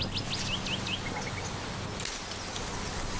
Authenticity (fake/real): real